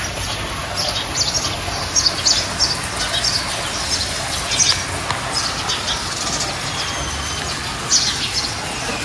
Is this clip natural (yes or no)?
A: yes